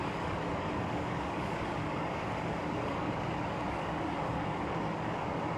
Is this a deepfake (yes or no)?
yes